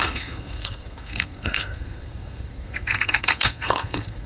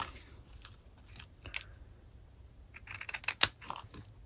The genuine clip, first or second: second